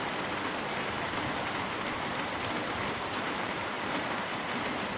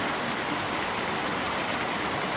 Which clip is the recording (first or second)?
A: second